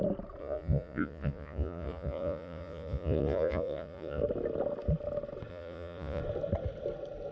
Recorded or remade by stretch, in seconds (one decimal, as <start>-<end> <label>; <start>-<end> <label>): 0.0-0.4 recorded; 0.4-4.2 remade; 4.2-5.5 recorded; 5.5-6.2 remade; 6.2-7.3 recorded